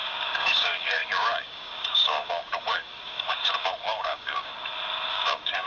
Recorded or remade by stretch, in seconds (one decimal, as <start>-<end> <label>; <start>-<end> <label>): 0.0-4.5 remade; 4.5-5.1 recorded; 5.1-5.7 remade